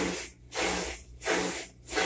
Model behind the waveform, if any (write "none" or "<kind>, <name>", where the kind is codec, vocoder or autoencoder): none